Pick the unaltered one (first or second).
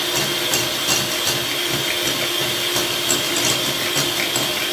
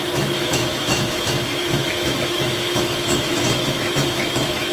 first